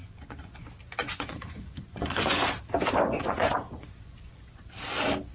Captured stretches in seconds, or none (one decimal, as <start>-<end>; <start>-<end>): 0.6-1.0; 2.4-3.2; 4.6-5.3